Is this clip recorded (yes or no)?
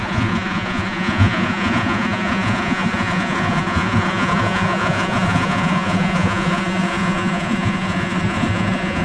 no